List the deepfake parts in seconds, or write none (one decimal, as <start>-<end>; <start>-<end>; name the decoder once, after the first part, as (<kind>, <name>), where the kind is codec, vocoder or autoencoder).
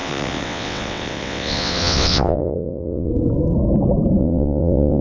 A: 0.0-3.1 (vocoder, WaveNeXt); 4.2-5.0